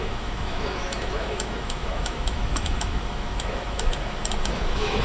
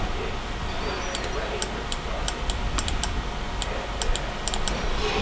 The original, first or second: second